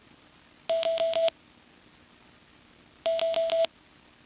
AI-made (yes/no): no